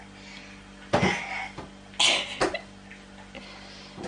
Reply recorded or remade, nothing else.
recorded